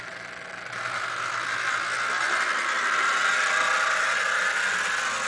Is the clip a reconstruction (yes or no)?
no